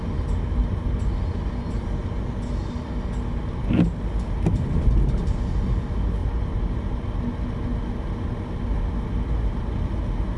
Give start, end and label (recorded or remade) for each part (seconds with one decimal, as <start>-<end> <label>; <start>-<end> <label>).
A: 0.0-6.2 recorded; 6.2-7.2 remade; 7.2-10.4 recorded